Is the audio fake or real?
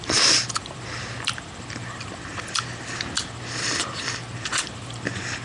real